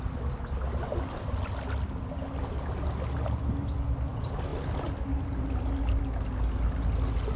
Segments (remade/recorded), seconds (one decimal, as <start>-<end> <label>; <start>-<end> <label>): 0.0-7.4 recorded